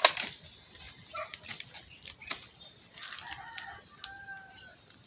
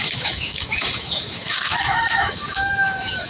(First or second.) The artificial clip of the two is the second